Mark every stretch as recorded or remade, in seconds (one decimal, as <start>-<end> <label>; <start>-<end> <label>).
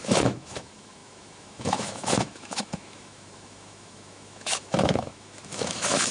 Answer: 0.0-6.1 remade